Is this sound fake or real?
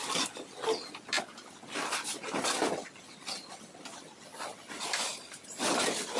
real